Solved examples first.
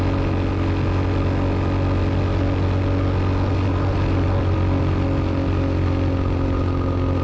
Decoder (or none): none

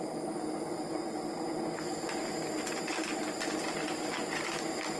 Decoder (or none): none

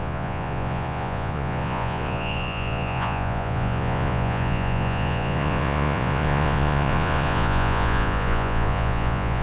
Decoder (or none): vocoder, Vocos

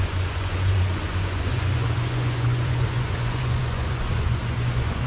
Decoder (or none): vocoder, Vocos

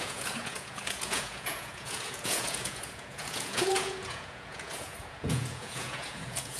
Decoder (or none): vocoder, Vocos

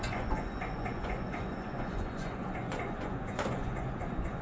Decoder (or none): vocoder, Vocos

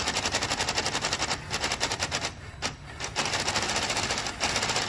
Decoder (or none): none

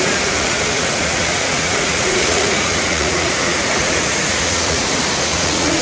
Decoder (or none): vocoder, Vocos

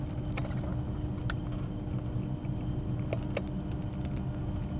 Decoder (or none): none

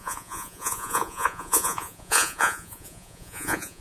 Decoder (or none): vocoder, Vocos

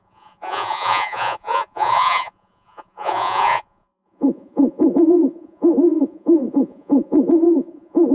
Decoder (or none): vocoder, Vocos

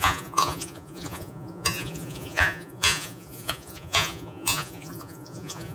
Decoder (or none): vocoder, Vocos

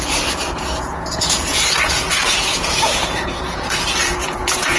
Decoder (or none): vocoder, Vocos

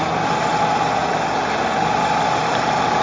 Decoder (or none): none